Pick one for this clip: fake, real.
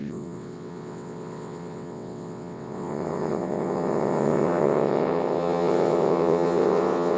fake